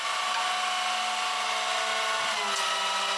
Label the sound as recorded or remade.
recorded